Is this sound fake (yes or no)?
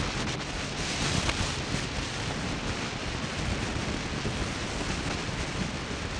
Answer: no